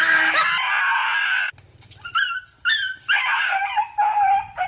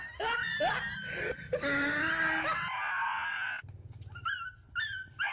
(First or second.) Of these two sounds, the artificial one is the first